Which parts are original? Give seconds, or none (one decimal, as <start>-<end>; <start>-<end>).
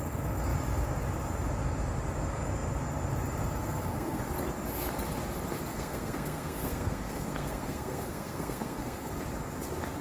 0.0-3.6; 4.2-5.7; 9.1-10.0